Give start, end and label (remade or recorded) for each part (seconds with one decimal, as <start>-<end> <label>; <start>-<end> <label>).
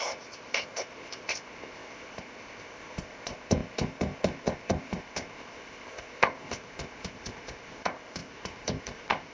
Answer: 0.0-9.3 remade